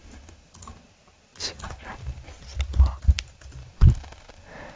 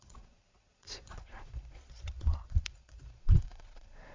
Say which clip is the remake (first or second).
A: second